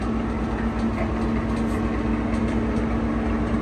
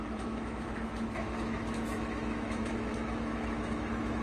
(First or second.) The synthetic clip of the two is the second